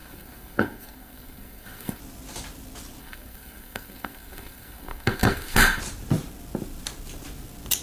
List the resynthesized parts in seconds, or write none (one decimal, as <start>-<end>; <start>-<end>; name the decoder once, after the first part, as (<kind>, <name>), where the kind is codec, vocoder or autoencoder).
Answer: 0.0-2.0 (codec, SNAC); 3.0-5.8